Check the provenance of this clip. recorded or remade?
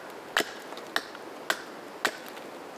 recorded